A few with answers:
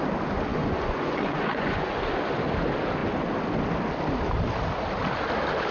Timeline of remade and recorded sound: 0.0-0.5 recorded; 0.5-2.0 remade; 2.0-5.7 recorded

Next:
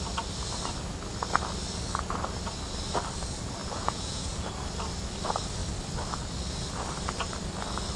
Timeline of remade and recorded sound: 0.0-3.6 recorded; 3.6-4.5 remade; 4.5-8.0 recorded

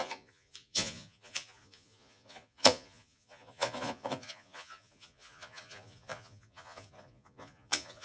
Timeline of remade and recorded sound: 0.0-8.0 remade

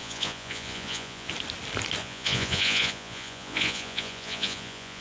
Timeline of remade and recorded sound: 0.0-1.3 remade; 1.3-2.0 recorded; 2.0-5.0 remade

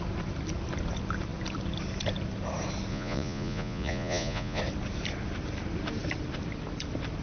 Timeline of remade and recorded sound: 0.0-2.9 recorded; 2.9-4.6 remade; 4.6-7.2 recorded

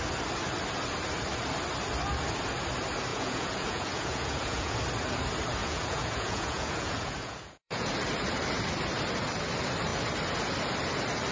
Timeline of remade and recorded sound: 0.0-3.1 recorded; 3.1-4.7 remade; 4.7-5.6 recorded; 5.6-7.9 remade; 7.9-11.3 recorded